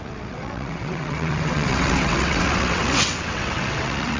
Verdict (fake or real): fake